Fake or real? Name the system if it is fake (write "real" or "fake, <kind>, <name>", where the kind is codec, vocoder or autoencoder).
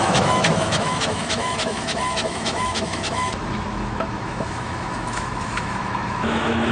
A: fake, autoencoder, DAC-VAE